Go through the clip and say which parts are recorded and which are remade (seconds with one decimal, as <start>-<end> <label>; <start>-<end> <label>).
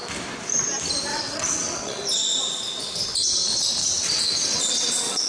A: 0.0-1.1 recorded; 1.1-2.0 remade; 2.0-3.8 recorded; 3.8-5.3 remade